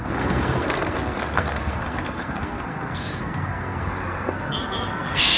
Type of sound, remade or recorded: remade